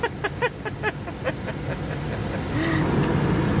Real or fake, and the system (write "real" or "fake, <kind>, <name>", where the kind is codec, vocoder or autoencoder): real